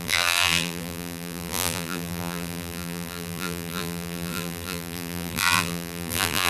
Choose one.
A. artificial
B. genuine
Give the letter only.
A